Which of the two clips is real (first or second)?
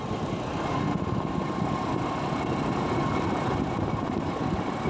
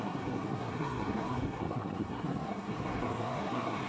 first